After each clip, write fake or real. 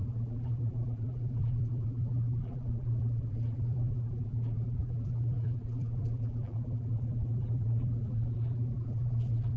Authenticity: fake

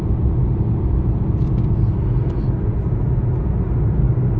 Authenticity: real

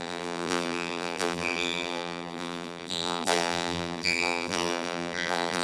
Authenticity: fake